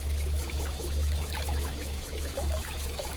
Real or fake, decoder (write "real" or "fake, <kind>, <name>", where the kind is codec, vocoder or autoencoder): fake, autoencoder, DAC-VAE